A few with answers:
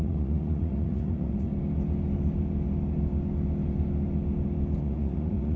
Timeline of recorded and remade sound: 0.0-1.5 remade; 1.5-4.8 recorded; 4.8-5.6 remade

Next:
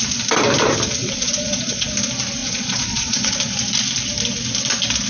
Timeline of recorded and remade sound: 0.0-1.0 recorded; 1.0-1.9 remade; 1.9-2.4 recorded; 2.4-3.5 remade; 3.5-5.1 recorded

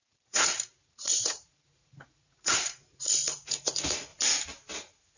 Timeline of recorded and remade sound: 0.0-4.1 remade; 4.1-5.2 recorded